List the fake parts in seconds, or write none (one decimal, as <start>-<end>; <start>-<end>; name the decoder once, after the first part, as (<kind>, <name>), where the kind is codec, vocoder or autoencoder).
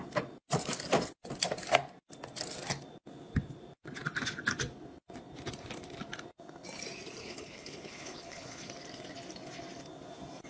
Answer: 7.2-8.7 (codec, HILCodec)